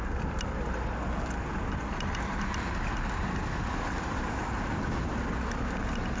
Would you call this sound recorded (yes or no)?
yes